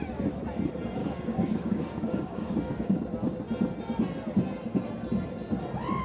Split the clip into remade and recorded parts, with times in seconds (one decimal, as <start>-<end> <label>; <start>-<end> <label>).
0.0-1.0 recorded; 1.0-3.0 remade; 3.0-6.0 recorded